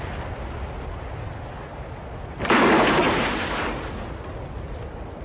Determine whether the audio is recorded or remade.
recorded